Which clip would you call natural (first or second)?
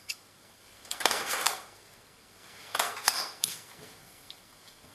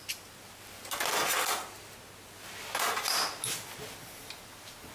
second